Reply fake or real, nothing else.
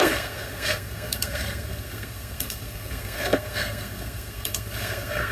fake